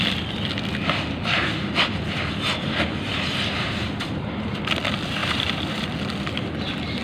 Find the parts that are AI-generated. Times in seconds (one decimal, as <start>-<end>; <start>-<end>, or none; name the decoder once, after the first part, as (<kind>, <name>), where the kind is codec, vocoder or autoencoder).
5.2-5.9 (vocoder, BigVGAN v2)